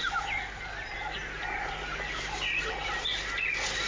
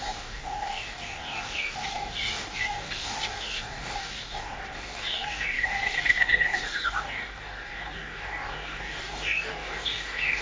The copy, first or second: second